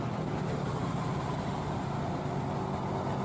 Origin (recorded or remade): recorded